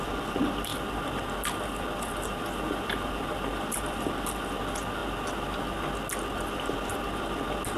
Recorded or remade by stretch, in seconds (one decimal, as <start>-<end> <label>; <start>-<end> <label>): 0.0-0.7 recorded; 0.7-4.5 remade; 4.5-7.8 recorded